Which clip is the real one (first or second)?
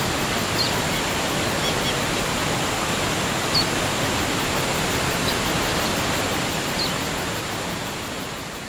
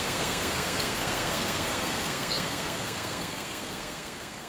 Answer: first